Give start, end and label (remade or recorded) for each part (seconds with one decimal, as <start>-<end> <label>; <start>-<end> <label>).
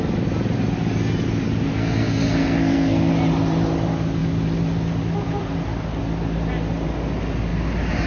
0.0-1.7 recorded; 1.7-3.1 remade; 3.1-8.1 recorded